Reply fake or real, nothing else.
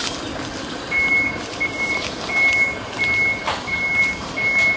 real